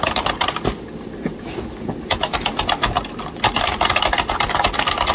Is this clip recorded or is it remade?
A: recorded